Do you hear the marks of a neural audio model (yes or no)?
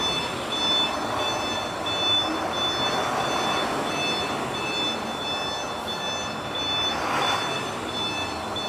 no